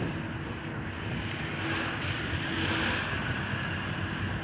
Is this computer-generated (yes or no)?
no